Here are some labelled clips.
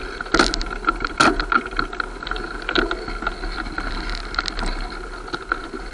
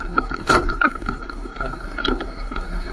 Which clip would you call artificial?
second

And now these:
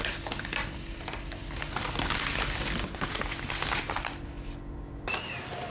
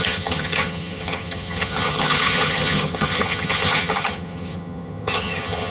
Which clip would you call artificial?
second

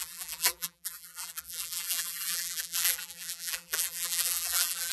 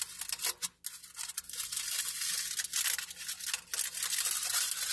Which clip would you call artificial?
first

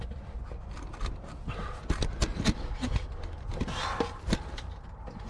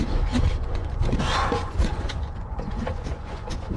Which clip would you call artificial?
second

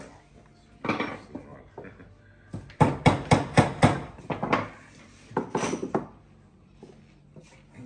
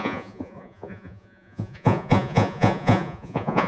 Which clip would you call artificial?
second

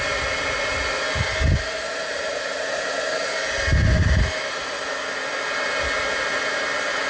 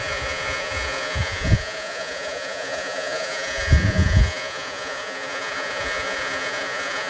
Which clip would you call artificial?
second